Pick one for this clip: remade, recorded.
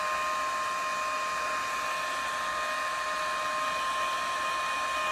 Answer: recorded